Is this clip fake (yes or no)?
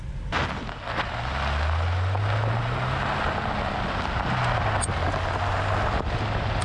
no